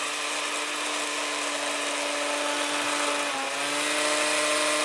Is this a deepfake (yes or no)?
no